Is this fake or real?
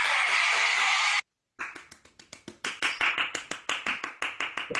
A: real